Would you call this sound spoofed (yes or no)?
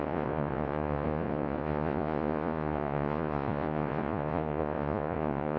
yes